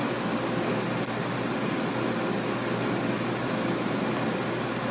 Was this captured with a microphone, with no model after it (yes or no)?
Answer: yes